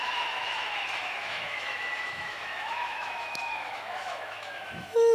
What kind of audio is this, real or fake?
fake